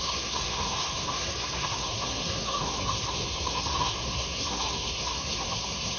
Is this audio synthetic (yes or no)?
yes